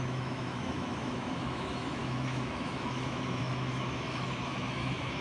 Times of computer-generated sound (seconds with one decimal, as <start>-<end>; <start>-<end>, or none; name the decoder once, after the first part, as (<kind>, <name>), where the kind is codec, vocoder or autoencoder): 0.0-5.2 (autoencoder, DAC-VAE)